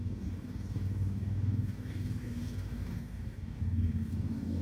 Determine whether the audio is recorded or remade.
remade